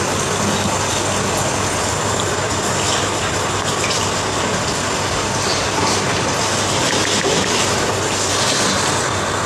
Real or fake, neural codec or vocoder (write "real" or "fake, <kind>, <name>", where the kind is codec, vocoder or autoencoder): real